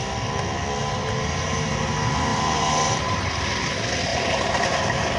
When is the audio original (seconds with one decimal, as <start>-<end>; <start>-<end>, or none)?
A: 0.0-0.8; 1.8-2.3; 3.4-4.1; 4.6-5.2